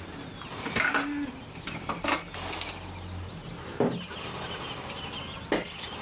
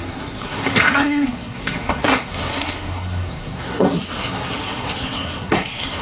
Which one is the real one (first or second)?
first